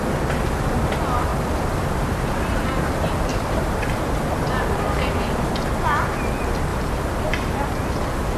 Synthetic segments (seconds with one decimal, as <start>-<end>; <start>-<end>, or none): 1.3-2.6; 3.3-5.5